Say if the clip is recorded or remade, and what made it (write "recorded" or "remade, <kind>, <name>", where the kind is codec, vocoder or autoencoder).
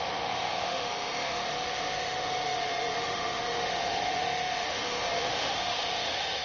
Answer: remade, autoencoder, DAC-VAE